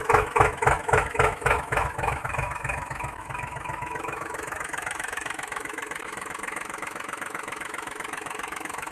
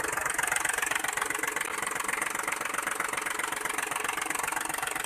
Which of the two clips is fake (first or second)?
first